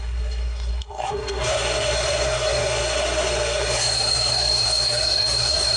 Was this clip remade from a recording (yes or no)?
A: yes